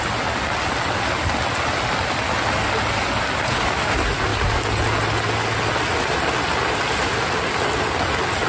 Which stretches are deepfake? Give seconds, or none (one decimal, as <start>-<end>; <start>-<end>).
none